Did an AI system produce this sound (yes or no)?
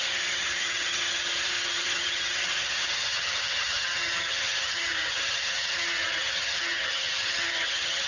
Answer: yes